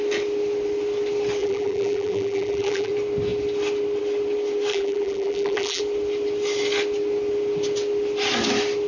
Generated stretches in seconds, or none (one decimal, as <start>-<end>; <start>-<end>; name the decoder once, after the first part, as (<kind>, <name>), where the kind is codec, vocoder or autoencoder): 1.4-2.9 (vocoder, BigVGAN v2); 4.7-5.8